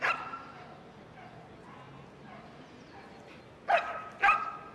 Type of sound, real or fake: real